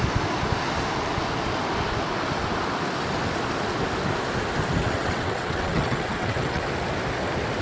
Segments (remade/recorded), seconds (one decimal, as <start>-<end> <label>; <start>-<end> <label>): 0.0-4.8 recorded; 4.8-6.6 remade; 6.6-7.6 recorded